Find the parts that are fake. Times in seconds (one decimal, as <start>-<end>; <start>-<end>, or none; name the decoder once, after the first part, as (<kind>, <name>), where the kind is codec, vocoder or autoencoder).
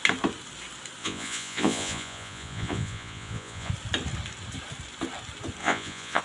1.0-3.7 (vocoder, Vocos); 5.6-6.2